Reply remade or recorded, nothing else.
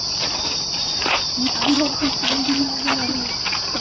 recorded